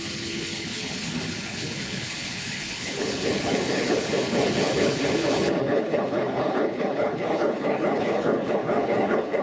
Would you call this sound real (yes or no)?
no